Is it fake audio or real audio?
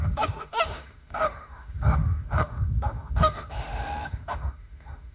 fake